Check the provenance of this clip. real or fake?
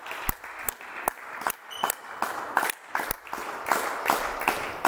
real